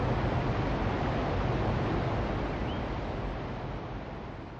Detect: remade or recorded recorded